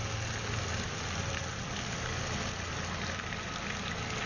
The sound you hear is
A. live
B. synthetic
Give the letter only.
A